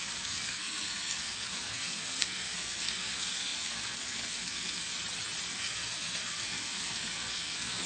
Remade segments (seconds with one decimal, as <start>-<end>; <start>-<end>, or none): 0.0-4.9; 5.5-7.9